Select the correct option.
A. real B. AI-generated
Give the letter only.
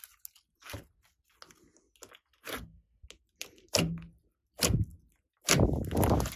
A